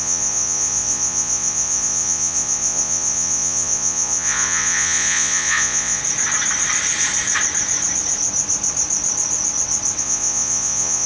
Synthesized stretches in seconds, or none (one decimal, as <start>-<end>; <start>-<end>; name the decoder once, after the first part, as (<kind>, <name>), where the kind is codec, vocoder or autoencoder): 0.0-6.0 (vocoder, Vocos); 10.0-11.1